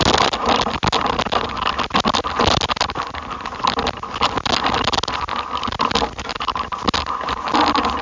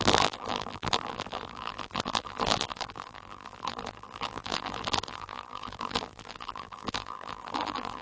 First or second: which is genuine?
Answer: first